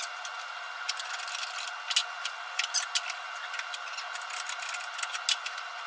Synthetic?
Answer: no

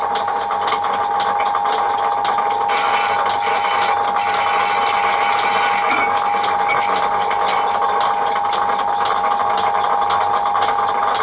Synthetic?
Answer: no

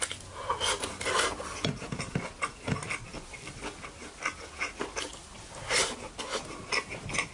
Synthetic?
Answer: no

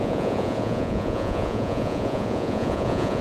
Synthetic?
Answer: yes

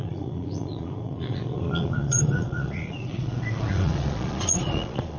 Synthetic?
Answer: yes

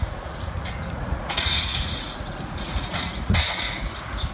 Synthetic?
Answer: yes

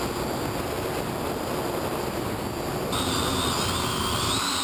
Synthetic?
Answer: no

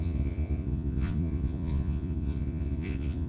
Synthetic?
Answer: yes